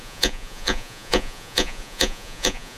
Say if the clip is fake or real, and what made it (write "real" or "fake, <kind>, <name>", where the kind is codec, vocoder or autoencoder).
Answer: fake, vocoder, Vocos